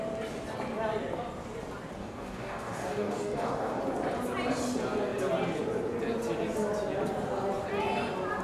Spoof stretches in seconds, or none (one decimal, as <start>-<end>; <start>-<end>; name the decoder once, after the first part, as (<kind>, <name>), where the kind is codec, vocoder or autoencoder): 2.0-3.8 (codec, DAC)